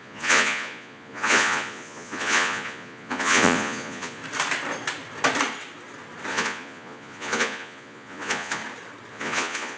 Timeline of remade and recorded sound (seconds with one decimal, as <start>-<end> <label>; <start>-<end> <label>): 0.0-4.2 remade; 4.2-6.3 recorded; 6.3-8.6 remade; 8.6-9.1 recorded; 9.1-9.8 remade